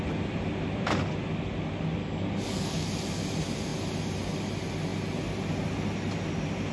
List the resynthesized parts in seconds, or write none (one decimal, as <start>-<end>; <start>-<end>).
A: 2.0-2.9